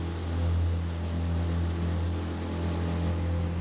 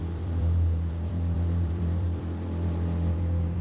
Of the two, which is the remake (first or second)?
second